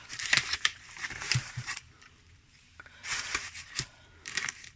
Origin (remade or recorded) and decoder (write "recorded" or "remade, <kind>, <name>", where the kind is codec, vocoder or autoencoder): remade, vocoder, BigVGAN v2